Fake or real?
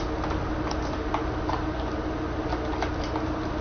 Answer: real